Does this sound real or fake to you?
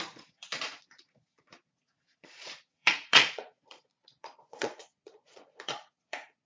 fake